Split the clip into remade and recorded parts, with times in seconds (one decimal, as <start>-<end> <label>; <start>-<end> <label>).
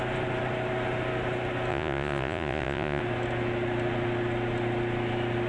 0.0-1.7 recorded; 1.7-3.0 remade; 3.0-5.5 recorded